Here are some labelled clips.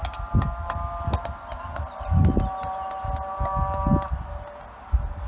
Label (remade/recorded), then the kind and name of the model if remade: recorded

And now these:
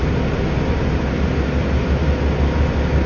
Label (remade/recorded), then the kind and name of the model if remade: recorded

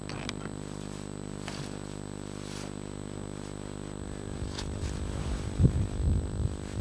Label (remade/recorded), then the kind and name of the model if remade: recorded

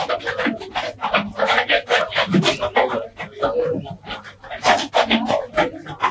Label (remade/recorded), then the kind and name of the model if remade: recorded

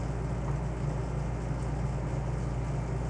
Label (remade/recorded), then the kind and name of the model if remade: recorded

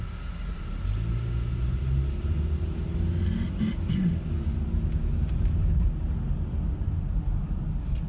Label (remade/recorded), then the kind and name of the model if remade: recorded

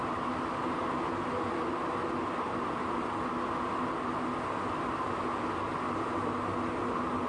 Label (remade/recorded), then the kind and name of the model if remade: recorded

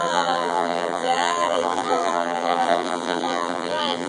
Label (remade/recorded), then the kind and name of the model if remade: remade, vocoder, BigVGAN v2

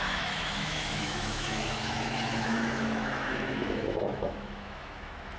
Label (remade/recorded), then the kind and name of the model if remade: remade, autoencoder, DAC-VAE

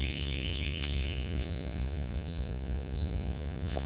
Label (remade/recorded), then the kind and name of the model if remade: remade, vocoder, Vocos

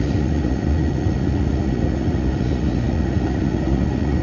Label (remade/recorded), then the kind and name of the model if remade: remade, vocoder, Vocos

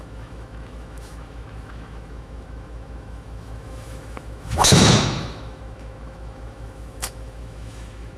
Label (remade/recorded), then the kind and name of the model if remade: remade, autoencoder, DAC-VAE